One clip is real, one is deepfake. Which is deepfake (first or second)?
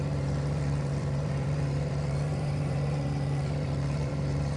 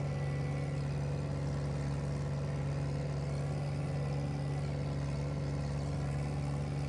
first